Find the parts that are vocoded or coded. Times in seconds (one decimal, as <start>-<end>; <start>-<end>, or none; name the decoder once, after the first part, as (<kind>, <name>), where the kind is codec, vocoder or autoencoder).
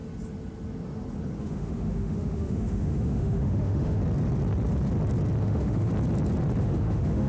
1.4-4.0 (autoencoder, DAC-VAE); 5.4-5.9; 6.6-7.3